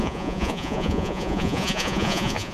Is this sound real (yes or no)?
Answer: no